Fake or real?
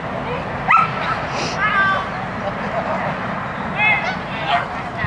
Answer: real